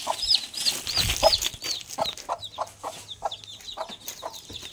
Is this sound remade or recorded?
recorded